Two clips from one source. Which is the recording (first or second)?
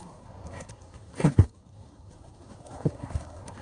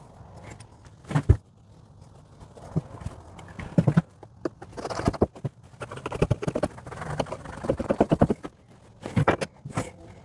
second